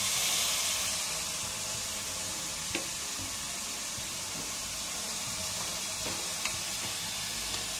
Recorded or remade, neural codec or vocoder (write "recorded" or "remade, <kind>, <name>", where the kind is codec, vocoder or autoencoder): recorded